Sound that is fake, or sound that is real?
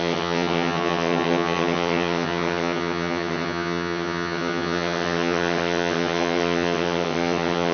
fake